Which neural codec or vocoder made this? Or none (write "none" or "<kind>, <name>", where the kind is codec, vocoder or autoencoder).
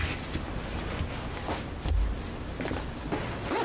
none